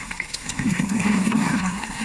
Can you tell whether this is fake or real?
fake